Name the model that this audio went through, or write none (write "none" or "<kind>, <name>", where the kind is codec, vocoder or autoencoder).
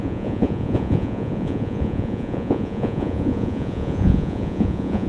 vocoder, Vocos